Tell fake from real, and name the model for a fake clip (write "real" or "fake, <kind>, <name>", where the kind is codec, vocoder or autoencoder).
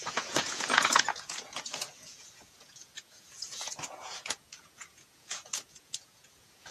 fake, vocoder, Vocos